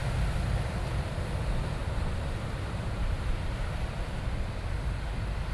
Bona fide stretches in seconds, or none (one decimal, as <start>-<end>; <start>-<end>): 0.0-1.8; 5.1-5.5